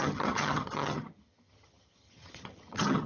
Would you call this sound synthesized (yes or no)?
yes